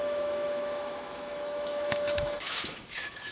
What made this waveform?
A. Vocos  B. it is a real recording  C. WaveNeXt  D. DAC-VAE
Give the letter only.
D